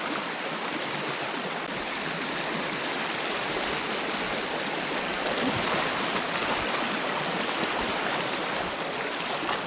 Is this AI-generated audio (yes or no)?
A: no